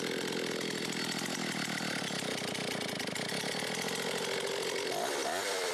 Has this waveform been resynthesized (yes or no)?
no